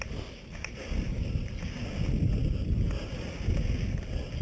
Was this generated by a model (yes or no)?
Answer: no